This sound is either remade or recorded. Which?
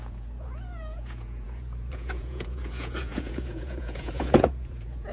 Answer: remade